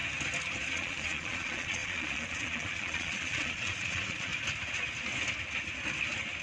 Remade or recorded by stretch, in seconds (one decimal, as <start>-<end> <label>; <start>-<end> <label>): 0.0-0.7 recorded; 0.7-4.3 remade; 4.3-6.4 recorded